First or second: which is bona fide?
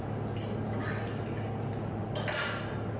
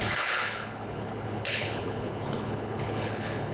first